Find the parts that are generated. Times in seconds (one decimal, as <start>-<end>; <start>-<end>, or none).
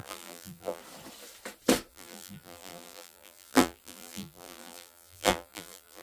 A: 0.0-0.8; 1.9-6.0